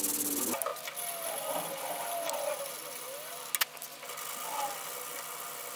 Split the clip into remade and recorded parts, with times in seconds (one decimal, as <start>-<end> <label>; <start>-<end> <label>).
0.0-5.8 recorded